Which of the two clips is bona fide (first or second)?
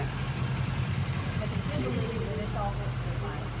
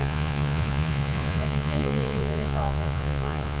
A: first